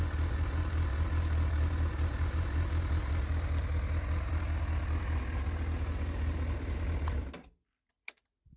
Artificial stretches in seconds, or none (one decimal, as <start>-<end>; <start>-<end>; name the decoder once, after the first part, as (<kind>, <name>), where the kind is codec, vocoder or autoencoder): none